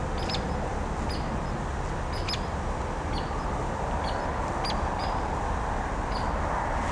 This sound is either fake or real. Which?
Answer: real